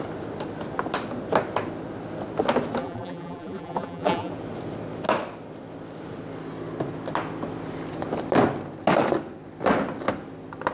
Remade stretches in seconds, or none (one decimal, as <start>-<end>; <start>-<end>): 2.8-4.3